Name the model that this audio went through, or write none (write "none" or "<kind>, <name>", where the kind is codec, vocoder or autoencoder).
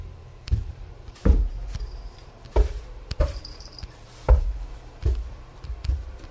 vocoder, BigVGAN v2